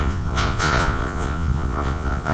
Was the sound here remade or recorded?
remade